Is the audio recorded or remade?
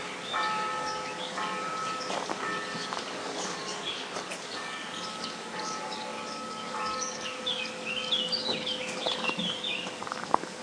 remade